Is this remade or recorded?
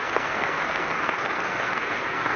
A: remade